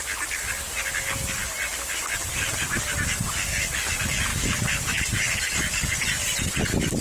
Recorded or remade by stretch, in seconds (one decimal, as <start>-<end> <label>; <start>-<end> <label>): 0.0-7.0 recorded